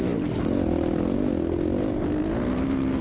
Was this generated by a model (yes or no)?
no